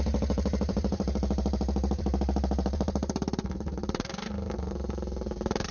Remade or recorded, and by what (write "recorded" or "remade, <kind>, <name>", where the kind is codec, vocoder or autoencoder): remade, vocoder, BigVGAN v2